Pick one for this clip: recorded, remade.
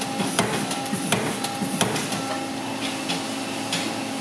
recorded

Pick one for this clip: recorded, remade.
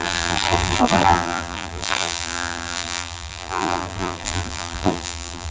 remade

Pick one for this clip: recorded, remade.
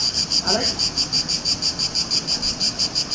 remade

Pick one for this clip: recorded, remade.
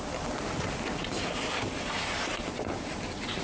remade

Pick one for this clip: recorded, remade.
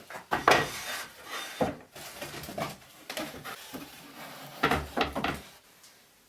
remade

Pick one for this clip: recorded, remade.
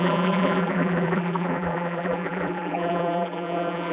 remade